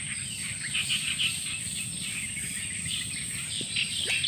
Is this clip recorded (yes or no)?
yes